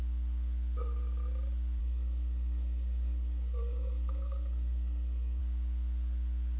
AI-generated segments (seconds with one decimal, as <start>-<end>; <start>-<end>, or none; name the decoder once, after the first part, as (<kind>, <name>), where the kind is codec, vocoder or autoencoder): 1.8-5.4 (codec, SNAC)